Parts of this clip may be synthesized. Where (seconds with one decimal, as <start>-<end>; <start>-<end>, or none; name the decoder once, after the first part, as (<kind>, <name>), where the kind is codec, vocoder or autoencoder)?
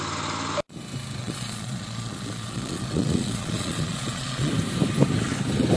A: 1.2-4.5 (vocoder, Vocos)